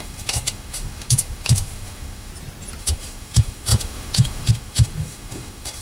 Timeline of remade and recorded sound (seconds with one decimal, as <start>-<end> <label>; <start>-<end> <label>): 0.0-2.3 remade; 2.3-2.8 recorded; 2.8-5.8 remade